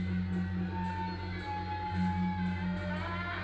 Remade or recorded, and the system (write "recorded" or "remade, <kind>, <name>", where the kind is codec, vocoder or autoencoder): recorded